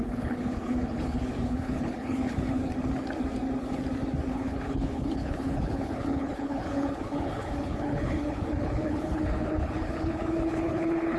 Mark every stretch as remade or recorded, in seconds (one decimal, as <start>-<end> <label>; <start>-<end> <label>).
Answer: 0.0-2.6 remade; 2.6-4.3 recorded; 4.3-11.2 remade